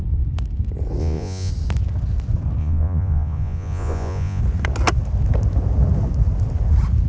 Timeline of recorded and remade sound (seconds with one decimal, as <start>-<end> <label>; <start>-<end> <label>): 0.0-1.0 recorded; 1.0-1.5 remade; 1.5-2.6 recorded; 2.6-4.4 remade; 4.4-7.1 recorded